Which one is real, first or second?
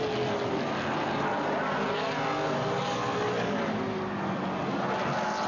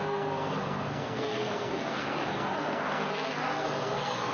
first